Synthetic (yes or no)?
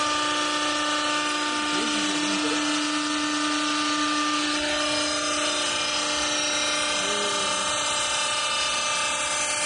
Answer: no